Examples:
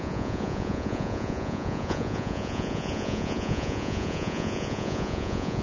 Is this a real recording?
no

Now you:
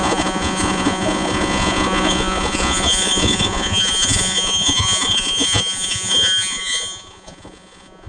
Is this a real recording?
no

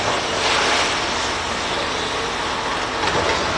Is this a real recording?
yes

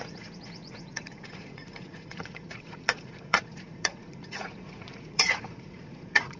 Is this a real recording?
no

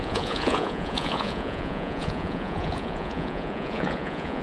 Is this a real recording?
no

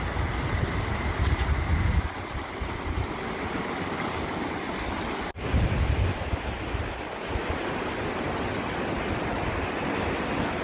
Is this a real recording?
yes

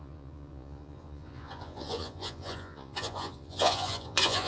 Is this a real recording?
no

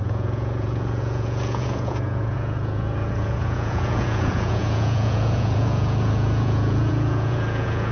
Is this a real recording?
no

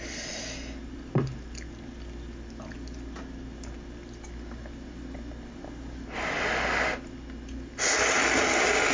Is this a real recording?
yes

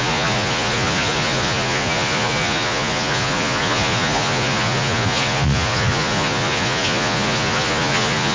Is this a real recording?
no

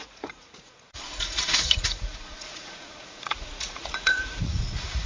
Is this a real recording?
no